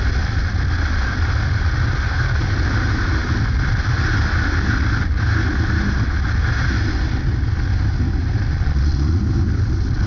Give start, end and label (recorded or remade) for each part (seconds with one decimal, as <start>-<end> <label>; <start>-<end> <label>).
0.0-8.5 recorded; 8.5-9.2 remade; 9.2-10.1 recorded